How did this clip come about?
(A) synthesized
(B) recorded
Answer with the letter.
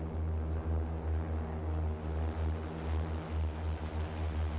B